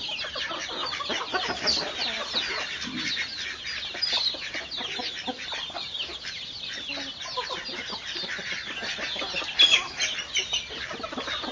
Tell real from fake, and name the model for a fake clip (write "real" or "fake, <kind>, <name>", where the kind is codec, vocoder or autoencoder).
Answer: real